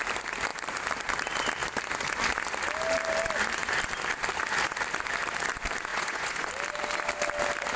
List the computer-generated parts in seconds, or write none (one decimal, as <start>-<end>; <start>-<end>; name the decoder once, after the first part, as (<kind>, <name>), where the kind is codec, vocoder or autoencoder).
5.9-6.5 (vocoder, Vocos)